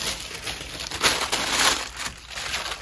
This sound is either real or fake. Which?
real